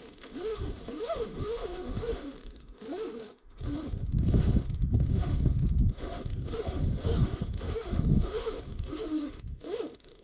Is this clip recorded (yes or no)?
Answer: no